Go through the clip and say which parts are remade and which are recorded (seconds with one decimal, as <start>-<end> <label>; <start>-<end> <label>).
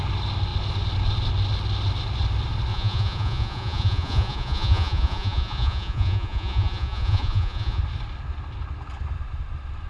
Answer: 0.0-2.7 recorded; 2.7-7.8 remade; 7.8-9.9 recorded